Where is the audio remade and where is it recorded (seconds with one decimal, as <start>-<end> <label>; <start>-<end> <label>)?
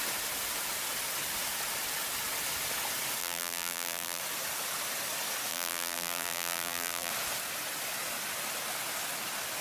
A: 0.0-3.2 recorded; 3.2-4.2 remade; 4.2-5.5 recorded; 5.5-7.1 remade; 7.1-9.6 recorded